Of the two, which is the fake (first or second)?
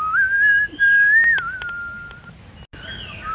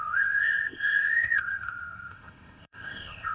second